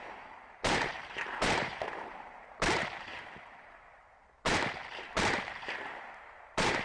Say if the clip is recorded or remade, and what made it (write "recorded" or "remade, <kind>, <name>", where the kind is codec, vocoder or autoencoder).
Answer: remade, vocoder, BigVGAN v2